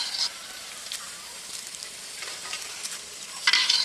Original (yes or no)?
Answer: no